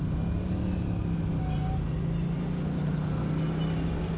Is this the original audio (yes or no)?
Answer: yes